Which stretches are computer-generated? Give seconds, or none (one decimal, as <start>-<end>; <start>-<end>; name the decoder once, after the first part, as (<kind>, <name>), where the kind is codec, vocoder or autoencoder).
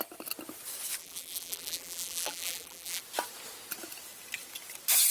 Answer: 1.0-3.0 (vocoder, BigVGAN v2)